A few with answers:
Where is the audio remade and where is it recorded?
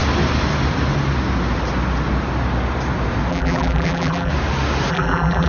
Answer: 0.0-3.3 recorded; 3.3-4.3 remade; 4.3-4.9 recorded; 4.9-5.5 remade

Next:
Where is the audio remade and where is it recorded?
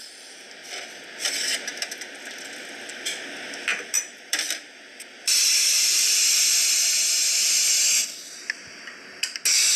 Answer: 0.0-3.7 recorded; 3.7-6.2 remade; 6.2-9.8 recorded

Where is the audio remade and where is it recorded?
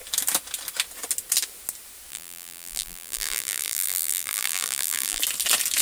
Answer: 0.0-2.1 recorded; 2.1-5.2 remade; 5.2-5.8 recorded